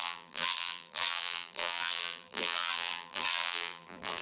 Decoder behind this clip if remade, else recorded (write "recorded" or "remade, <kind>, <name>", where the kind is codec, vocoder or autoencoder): remade, vocoder, BigVGAN v2